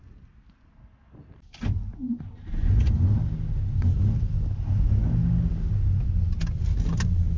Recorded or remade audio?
recorded